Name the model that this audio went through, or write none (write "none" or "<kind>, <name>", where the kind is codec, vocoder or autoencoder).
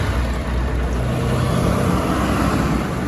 none